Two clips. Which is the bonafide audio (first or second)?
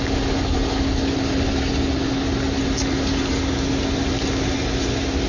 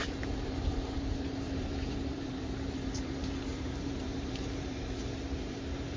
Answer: first